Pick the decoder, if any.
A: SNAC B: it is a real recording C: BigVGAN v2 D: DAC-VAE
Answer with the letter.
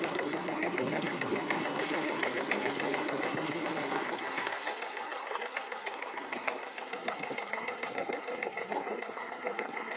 A